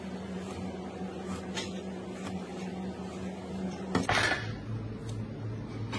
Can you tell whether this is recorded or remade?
recorded